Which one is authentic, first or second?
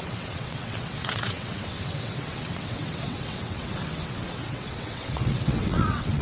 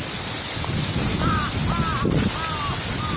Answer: second